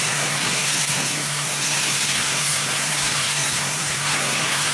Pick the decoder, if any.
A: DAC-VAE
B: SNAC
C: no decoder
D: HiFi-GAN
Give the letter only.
B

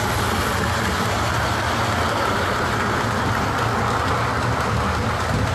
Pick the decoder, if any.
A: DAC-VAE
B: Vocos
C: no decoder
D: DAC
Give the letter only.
C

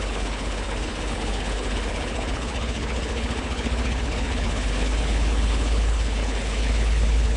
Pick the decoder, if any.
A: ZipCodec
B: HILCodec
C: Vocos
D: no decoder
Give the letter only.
B